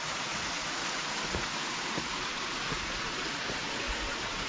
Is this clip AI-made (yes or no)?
yes